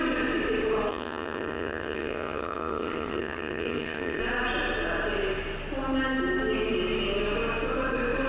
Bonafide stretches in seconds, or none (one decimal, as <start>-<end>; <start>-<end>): 0.0-0.9; 4.2-8.3